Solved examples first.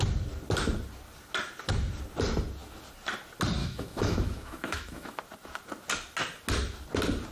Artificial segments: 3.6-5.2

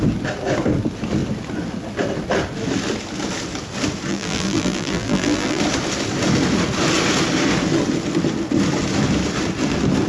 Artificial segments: 4.1-5.6

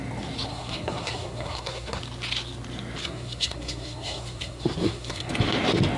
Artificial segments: 0.5-2.0; 3.0-5.3